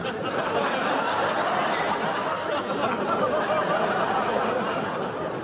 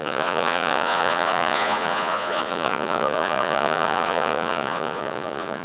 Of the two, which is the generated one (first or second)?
second